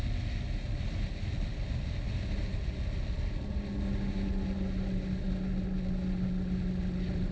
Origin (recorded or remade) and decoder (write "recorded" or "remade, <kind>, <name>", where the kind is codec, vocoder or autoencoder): recorded